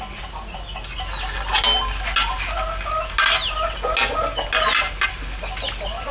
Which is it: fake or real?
real